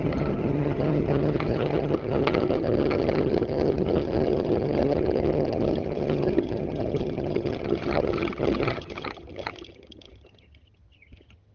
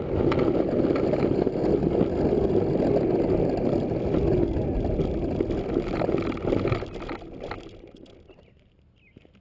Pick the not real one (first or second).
first